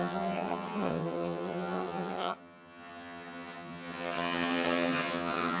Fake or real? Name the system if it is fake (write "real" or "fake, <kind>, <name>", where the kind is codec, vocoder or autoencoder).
fake, vocoder, HiFi-GAN